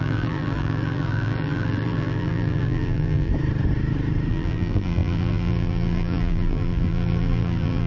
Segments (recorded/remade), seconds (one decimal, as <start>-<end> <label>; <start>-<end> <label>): 0.0-3.3 remade; 3.3-4.3 recorded; 4.3-7.9 remade